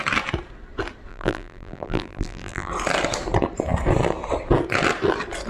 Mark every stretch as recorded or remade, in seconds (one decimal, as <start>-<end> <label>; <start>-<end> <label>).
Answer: 0.0-1.1 recorded; 1.1-2.7 remade; 2.7-5.5 recorded